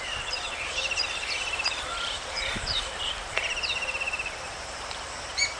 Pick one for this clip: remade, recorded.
remade